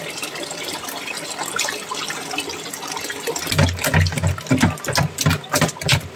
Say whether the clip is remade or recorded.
recorded